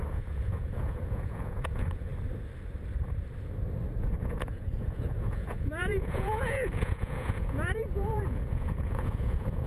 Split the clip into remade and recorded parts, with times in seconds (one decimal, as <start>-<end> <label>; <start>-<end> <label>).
0.0-2.1 remade; 2.1-4.0 recorded; 4.0-9.7 remade